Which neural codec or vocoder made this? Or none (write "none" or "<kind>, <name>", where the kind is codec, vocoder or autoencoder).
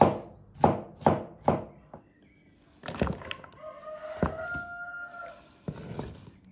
none